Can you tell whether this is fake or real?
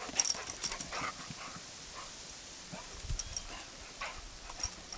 real